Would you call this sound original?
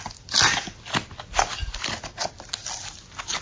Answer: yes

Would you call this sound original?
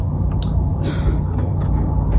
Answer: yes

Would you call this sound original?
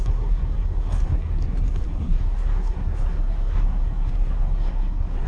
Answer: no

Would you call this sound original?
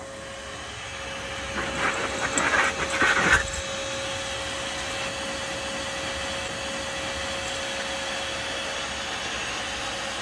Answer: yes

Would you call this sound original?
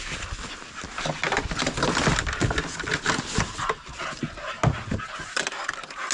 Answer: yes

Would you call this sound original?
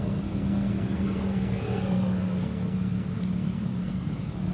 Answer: no